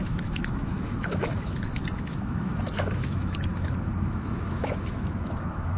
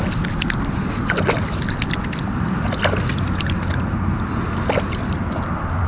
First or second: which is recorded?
second